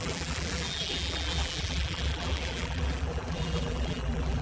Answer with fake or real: fake